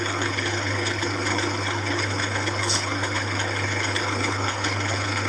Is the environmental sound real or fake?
fake